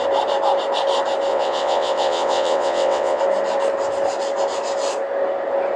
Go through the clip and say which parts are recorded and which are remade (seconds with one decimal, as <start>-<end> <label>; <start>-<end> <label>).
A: 0.0-1.3 recorded; 1.3-3.2 remade; 3.2-5.8 recorded